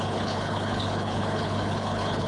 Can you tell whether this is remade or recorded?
remade